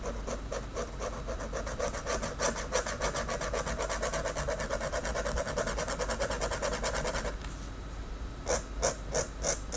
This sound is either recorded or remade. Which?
recorded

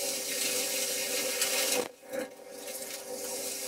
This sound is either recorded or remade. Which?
recorded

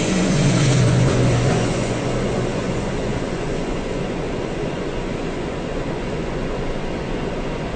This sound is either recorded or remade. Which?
remade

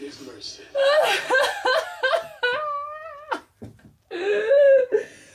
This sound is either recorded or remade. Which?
recorded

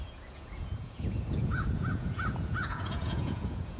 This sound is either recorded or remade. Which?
remade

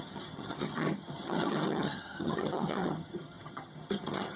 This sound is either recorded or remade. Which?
remade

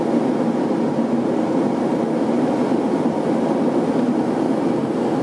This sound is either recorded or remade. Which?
recorded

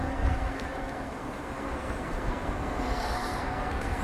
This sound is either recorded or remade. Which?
remade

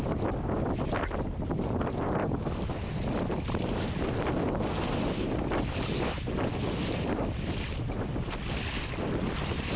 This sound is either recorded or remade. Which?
recorded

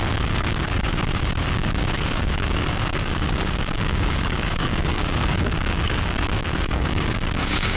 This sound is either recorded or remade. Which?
remade